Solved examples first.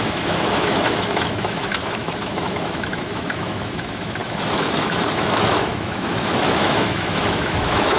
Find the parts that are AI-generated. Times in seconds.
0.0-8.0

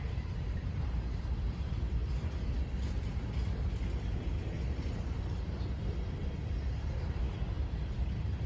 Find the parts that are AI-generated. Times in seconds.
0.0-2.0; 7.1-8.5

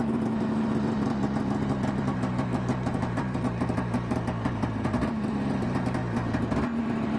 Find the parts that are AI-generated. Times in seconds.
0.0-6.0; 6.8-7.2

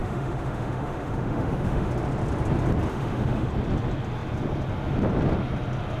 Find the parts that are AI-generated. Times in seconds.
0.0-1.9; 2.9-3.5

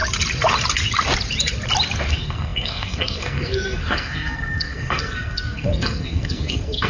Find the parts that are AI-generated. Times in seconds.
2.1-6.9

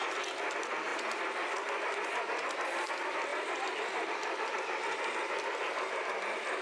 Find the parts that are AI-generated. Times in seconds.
0.9-2.9; 3.3-6.6

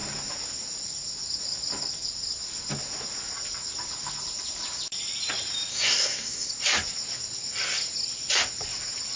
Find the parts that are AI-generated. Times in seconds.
5.7-6.5

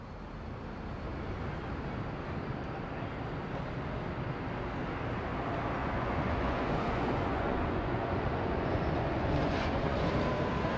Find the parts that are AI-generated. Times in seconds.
5.8-10.1